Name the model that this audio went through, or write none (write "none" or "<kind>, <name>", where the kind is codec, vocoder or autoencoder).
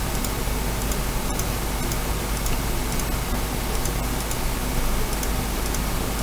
none